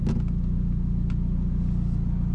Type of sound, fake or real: real